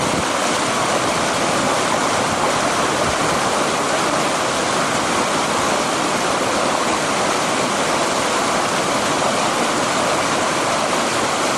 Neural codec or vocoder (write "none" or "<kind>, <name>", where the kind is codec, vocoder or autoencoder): vocoder, BigVGAN v2